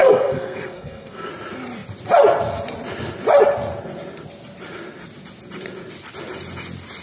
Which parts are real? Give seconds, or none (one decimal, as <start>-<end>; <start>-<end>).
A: 1.3-7.0